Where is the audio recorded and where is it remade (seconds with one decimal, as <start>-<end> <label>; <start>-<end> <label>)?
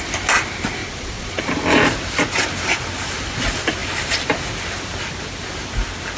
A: 0.0-0.8 recorded; 0.8-1.4 remade; 1.4-6.2 recorded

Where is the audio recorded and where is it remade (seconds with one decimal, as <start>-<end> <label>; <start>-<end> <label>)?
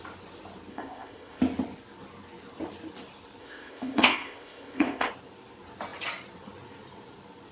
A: 0.0-0.7 recorded; 0.7-1.4 remade; 1.4-3.4 recorded; 3.4-5.1 remade; 5.1-7.5 recorded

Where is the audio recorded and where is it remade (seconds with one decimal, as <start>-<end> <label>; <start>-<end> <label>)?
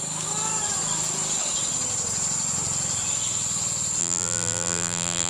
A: 0.0-4.0 recorded; 4.0-5.3 remade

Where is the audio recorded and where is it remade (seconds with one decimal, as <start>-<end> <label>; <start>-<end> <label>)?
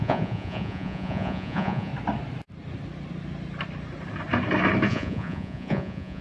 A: 0.0-1.9 remade; 1.9-4.9 recorded; 4.9-6.2 remade